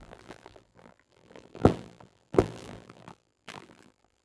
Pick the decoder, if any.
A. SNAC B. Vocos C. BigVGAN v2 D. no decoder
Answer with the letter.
C